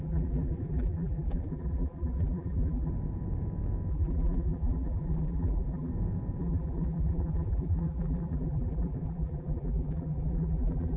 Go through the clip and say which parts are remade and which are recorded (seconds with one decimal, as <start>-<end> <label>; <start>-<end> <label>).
0.0-2.9 remade; 2.9-3.9 recorded; 3.9-5.9 remade; 5.9-6.4 recorded; 6.4-11.0 remade